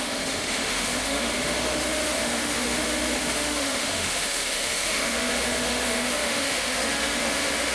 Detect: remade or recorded remade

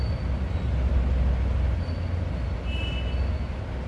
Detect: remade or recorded recorded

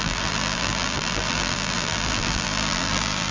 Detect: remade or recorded remade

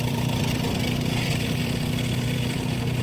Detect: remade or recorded remade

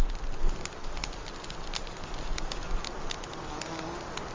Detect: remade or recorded recorded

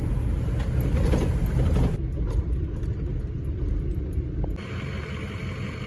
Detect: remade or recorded recorded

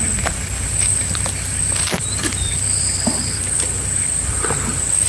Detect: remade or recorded recorded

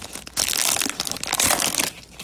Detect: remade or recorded recorded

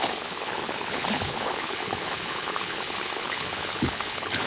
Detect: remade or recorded remade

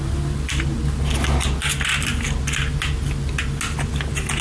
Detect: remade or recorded recorded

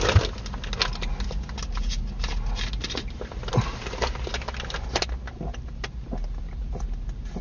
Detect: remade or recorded recorded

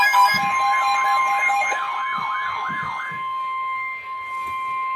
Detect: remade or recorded remade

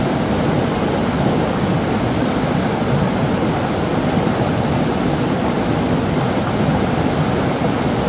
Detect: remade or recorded recorded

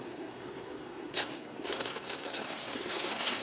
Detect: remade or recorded remade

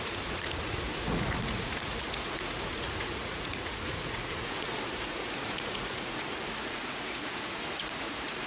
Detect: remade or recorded remade